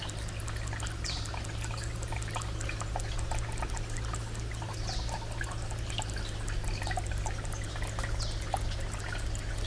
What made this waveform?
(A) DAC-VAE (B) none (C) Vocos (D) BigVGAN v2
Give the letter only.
B